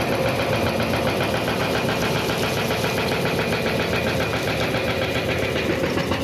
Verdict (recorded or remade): recorded